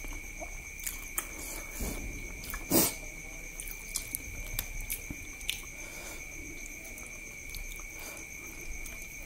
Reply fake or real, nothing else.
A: real